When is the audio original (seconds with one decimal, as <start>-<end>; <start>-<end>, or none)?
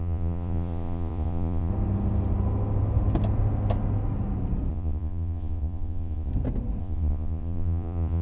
1.7-4.7; 6.3-6.8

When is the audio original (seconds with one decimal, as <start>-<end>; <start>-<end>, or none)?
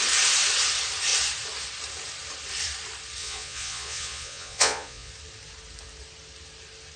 0.0-3.2; 5.1-7.0